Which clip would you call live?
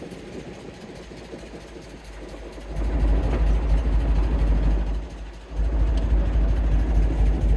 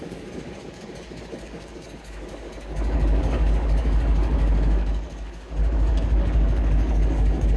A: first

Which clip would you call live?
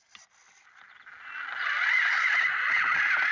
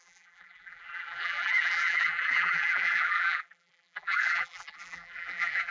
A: first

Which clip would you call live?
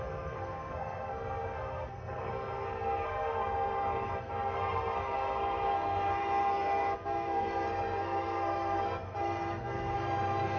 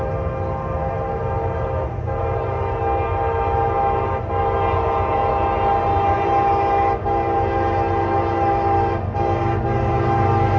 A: second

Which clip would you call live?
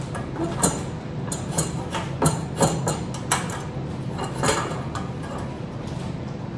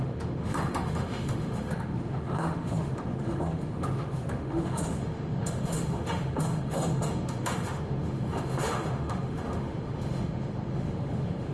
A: first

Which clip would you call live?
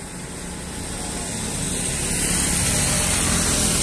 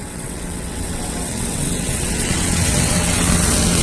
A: first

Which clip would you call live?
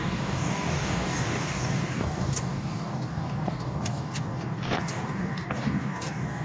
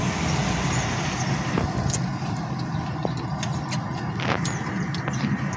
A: second